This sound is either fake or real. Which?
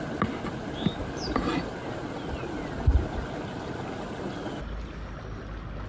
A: real